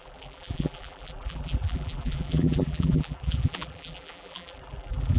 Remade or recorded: remade